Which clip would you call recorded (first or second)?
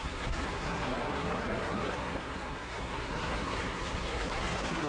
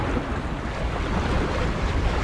second